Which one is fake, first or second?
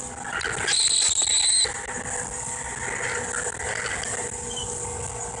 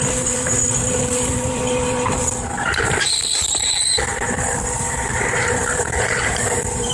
second